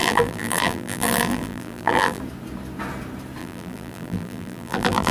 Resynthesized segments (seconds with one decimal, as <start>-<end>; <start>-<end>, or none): 0.0-2.2; 3.4-5.1